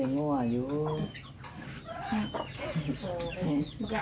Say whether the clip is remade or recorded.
recorded